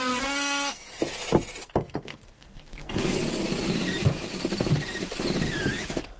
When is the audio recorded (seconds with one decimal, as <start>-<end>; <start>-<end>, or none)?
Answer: 1.0-1.6; 3.2-6.2